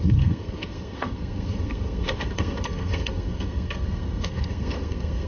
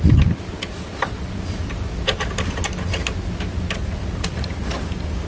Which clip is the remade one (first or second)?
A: first